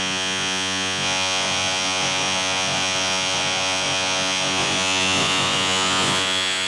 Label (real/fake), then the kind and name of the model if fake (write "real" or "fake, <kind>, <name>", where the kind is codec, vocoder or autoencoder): fake, vocoder, Vocos